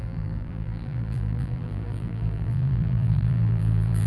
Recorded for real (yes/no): no